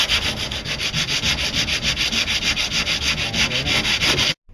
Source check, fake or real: real